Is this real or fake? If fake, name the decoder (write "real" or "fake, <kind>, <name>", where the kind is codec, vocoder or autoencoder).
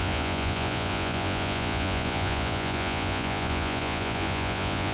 fake, vocoder, Vocos